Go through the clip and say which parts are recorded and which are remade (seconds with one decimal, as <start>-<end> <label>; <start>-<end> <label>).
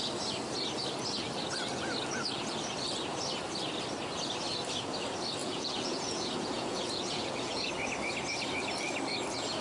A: 0.0-5.4 recorded; 5.4-7.7 remade; 7.7-9.6 recorded